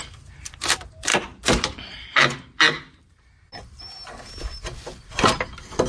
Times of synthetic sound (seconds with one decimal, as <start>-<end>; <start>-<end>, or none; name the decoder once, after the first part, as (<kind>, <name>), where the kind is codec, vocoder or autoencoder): none